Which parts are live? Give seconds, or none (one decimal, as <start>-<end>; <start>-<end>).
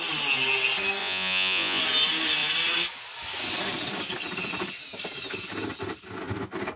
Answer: 0.0-1.0; 1.8-6.8